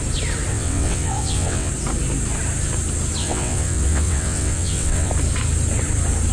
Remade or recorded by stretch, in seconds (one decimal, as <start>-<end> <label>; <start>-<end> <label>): 0.0-0.5 recorded; 0.5-1.7 remade; 1.7-3.2 recorded; 3.2-5.1 remade; 5.1-6.3 recorded